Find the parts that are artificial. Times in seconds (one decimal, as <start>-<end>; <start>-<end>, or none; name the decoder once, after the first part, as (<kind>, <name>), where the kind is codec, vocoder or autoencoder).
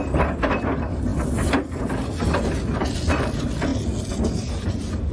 none